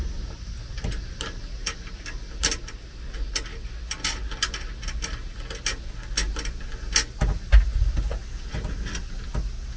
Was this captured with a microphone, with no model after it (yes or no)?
yes